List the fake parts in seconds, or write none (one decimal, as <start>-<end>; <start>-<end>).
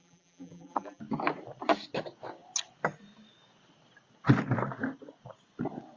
0.0-1.0